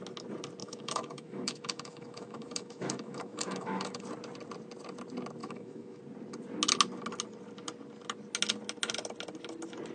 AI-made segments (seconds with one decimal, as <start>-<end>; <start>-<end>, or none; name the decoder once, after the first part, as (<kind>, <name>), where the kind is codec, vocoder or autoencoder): 0.6-4.0 (autoencoder, DAC-VAE); 5.4-6.0